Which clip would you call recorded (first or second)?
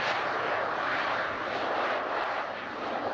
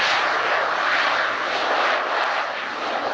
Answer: second